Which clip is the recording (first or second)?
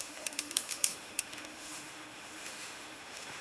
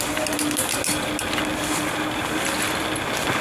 second